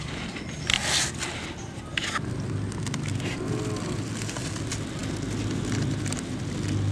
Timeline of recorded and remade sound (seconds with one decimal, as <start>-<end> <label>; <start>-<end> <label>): 0.0-6.9 recorded